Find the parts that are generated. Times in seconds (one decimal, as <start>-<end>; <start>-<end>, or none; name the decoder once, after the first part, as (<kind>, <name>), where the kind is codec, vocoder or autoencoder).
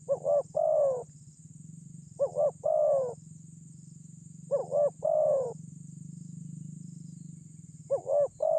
none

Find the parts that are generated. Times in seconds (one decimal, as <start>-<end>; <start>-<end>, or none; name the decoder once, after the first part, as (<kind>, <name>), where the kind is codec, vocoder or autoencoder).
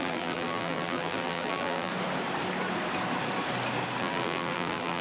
0.0-1.9 (vocoder, BigVGAN v2); 4.0-5.0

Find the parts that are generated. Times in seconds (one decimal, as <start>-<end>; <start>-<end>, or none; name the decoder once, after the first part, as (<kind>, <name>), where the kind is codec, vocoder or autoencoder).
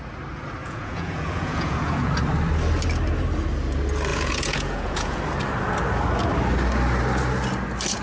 0.6-2.1 (vocoder, Vocos); 4.1-5.2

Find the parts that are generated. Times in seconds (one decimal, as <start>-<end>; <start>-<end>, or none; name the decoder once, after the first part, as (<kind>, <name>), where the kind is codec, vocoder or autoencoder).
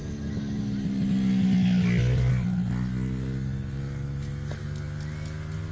none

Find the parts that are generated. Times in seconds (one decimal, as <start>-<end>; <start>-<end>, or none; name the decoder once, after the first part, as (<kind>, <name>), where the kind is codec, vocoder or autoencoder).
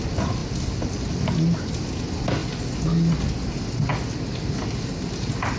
none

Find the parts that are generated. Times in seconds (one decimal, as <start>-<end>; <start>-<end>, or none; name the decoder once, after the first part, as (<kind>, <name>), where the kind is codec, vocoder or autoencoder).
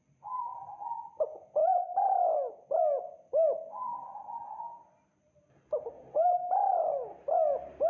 none